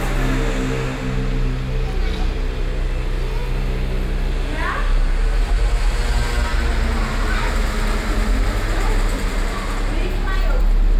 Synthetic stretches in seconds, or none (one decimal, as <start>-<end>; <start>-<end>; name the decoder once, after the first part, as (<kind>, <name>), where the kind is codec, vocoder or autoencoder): none